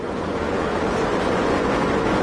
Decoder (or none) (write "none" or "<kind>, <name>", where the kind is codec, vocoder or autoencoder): vocoder, Vocos